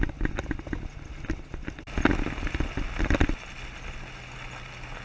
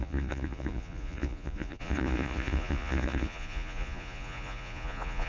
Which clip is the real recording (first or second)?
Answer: first